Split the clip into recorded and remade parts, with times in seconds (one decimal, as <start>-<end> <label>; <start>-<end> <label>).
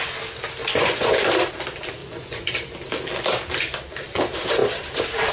0.0-0.6 recorded; 0.6-1.3 remade; 1.3-2.0 recorded; 2.0-2.5 remade; 2.5-5.3 recorded